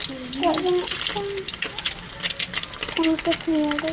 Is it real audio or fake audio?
real